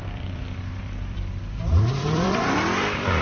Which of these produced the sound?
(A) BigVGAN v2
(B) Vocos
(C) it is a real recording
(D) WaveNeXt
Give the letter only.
A